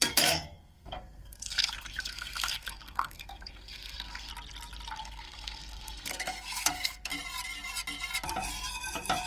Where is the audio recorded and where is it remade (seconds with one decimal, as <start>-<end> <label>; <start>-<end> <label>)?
0.0-4.3 remade; 4.3-5.0 recorded; 5.0-7.1 remade; 7.1-9.3 recorded